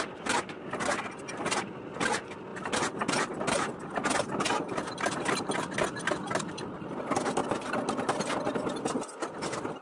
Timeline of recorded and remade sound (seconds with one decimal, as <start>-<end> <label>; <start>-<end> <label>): 0.0-9.8 recorded